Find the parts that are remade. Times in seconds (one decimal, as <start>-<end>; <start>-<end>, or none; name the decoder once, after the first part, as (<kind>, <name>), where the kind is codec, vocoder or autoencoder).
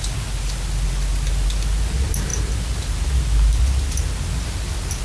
none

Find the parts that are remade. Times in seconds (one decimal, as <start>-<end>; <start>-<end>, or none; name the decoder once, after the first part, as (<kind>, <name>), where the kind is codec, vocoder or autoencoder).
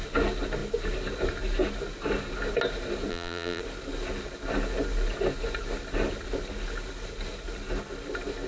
3.1-3.6 (vocoder, BigVGAN v2)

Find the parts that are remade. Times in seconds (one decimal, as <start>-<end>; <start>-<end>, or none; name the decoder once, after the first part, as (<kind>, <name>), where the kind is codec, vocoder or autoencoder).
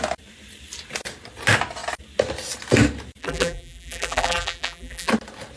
3.2-5.1 (vocoder, BigVGAN v2)